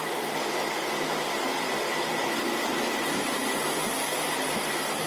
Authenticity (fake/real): real